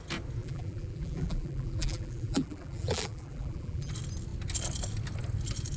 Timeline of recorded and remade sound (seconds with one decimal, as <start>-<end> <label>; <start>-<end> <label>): 0.0-0.4 recorded; 0.4-3.9 remade; 3.9-5.8 recorded